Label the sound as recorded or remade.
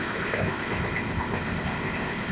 remade